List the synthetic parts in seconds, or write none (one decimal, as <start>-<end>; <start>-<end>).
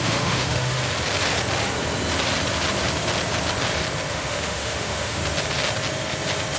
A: 0.0-0.8; 4.1-5.2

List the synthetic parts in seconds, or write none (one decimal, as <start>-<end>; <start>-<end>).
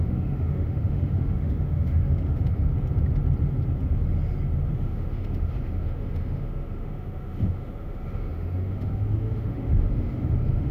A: 0.0-2.7; 4.7-10.7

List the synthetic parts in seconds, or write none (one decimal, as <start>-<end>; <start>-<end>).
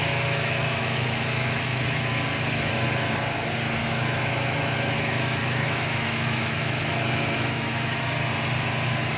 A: 0.0-2.1; 3.8-8.0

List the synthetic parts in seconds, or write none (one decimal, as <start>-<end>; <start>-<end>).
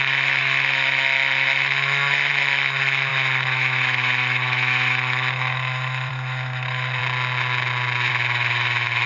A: 0.0-7.0; 8.1-9.1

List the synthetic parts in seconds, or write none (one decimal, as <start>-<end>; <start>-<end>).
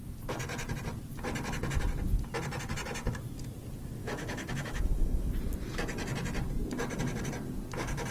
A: 4.0-5.3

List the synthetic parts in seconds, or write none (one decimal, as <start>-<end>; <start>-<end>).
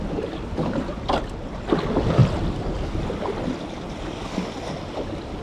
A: none